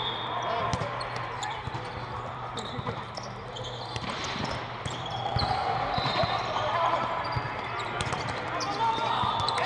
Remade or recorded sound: remade